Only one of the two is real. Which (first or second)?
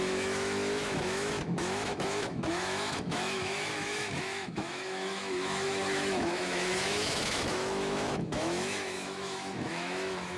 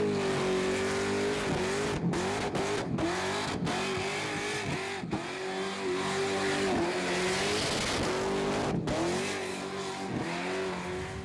second